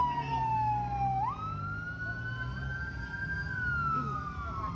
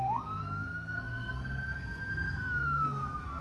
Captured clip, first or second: first